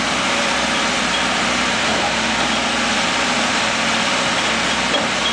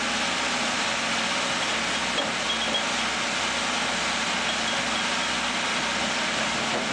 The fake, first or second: first